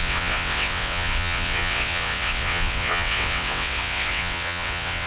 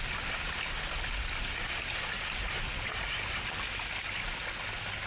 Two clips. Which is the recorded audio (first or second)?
second